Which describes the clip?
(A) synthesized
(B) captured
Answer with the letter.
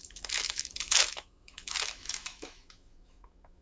A